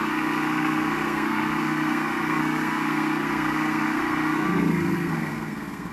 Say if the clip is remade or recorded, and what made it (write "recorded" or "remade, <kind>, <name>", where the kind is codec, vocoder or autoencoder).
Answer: remade, codec, SNAC